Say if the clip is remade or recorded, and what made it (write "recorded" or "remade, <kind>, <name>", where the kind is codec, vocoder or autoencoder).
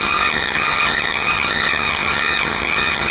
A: remade, vocoder, HiFi-GAN